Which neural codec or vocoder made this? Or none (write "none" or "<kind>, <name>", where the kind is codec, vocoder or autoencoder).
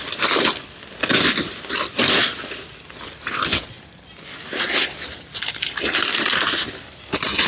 none